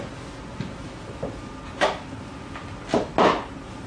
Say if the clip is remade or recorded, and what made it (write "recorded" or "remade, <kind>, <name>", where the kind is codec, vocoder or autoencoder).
recorded